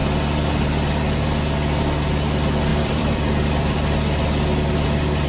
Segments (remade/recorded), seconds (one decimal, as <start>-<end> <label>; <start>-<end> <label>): 0.0-0.5 remade; 0.5-2.7 recorded; 2.7-4.3 remade; 4.3-5.3 recorded